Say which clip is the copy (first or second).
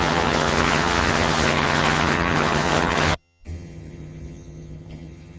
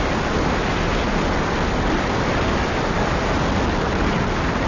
first